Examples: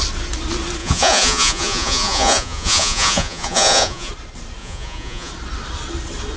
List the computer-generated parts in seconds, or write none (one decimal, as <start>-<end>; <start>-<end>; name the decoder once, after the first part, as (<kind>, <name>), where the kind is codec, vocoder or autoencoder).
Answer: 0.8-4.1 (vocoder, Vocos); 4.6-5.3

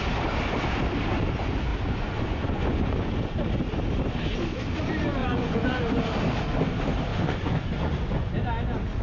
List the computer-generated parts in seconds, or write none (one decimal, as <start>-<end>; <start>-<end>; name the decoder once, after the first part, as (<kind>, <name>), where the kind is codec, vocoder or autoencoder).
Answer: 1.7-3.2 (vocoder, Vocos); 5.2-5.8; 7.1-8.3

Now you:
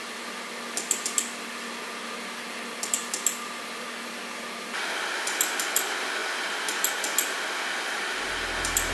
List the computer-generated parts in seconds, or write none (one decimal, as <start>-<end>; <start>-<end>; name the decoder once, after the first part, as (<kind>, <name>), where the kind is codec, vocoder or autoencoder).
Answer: none

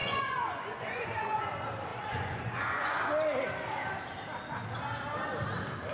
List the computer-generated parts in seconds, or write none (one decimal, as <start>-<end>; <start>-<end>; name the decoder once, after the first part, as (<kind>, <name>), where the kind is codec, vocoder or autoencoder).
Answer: 0.0-1.5 (vocoder, Vocos); 1.9-3.0

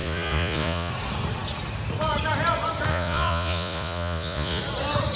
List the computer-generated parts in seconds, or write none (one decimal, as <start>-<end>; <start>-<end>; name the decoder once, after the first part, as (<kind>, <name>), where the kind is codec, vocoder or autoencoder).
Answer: 0.0-0.9 (vocoder, Vocos); 2.9-4.6

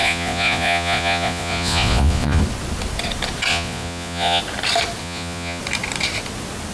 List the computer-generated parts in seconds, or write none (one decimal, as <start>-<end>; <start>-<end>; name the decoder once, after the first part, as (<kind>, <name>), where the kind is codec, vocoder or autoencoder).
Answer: 0.0-2.4 (vocoder, Vocos); 3.5-4.4; 5.0-5.6

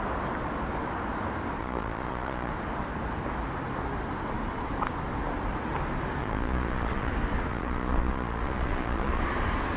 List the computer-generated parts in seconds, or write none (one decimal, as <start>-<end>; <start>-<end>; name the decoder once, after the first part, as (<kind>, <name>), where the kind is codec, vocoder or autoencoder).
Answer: 1.6-2.5 (vocoder, Vocos); 6.2-7.1; 7.5-9.2

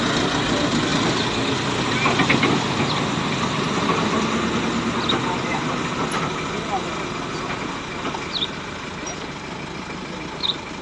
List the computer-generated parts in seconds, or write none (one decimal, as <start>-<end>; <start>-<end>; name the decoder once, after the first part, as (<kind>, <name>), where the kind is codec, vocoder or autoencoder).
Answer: none